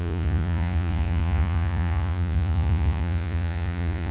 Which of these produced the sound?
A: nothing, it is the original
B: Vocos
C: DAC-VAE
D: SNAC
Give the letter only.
B